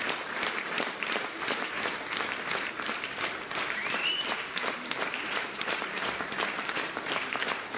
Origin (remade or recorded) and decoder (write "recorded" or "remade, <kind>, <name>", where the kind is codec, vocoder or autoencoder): remade, vocoder, BigVGAN v2